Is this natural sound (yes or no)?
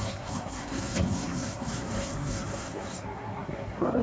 no